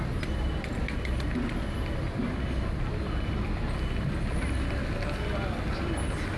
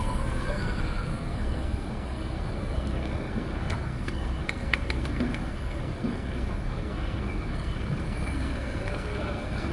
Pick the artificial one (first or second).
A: second